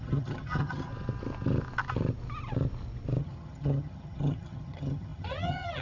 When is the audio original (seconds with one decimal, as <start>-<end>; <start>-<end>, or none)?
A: 0.9-3.2